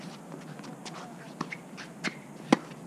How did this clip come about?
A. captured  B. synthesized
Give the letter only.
A